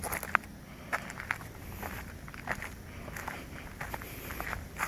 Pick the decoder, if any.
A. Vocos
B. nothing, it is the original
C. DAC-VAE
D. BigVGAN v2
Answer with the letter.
B